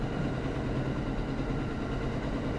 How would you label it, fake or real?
real